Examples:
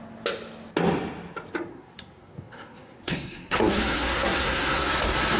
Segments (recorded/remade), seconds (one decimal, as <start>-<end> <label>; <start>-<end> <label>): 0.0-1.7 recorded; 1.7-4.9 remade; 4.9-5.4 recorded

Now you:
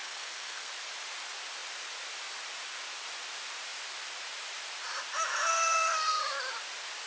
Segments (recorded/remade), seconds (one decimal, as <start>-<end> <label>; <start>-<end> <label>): 0.0-0.7 remade; 0.7-5.5 recorded; 5.5-6.2 remade; 6.2-7.1 recorded

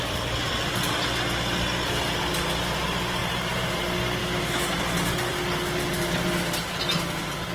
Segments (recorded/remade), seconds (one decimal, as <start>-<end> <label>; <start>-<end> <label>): 0.0-4.2 recorded; 4.2-4.7 remade; 4.7-7.5 recorded

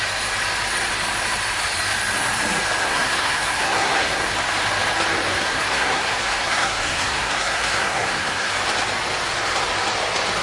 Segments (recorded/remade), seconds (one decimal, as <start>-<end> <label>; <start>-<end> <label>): 0.0-2.8 recorded; 2.8-4.3 remade; 4.3-5.3 recorded; 5.3-8.5 remade; 8.5-10.4 recorded

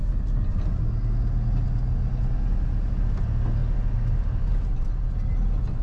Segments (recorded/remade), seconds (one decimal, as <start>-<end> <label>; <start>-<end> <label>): 0.0-5.8 recorded